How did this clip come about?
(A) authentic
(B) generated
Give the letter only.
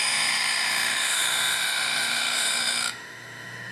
B